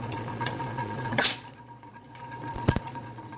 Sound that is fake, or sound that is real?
fake